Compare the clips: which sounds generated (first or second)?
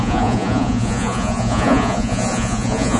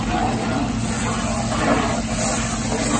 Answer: first